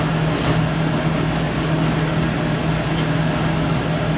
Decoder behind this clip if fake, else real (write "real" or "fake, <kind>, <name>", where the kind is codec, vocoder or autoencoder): real